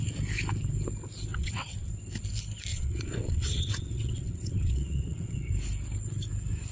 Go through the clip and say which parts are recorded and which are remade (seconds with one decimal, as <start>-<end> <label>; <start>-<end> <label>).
0.0-1.3 recorded; 1.3-1.9 remade; 1.9-2.7 recorded; 2.7-5.5 remade; 5.5-6.7 recorded